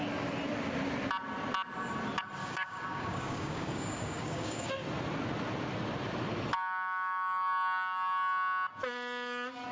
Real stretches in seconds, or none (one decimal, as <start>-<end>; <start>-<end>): 0.0-2.4; 4.7-9.7